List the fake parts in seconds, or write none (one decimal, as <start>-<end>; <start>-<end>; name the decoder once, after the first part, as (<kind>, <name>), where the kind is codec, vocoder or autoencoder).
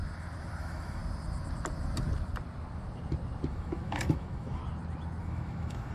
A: 0.6-1.0 (autoencoder, DAC-VAE); 3.5-4.6; 5.2-5.9